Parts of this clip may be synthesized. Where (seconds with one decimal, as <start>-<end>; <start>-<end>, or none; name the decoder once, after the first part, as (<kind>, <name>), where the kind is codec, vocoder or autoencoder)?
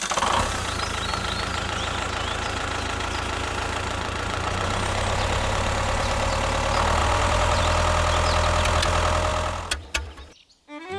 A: 1.1-6.3 (vocoder, Vocos); 7.0-7.6